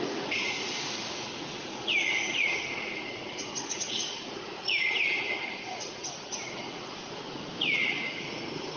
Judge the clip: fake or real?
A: fake